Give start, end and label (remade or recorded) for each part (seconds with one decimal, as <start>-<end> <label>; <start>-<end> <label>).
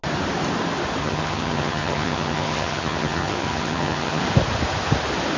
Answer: 0.0-1.0 recorded; 1.0-4.2 remade; 4.2-5.4 recorded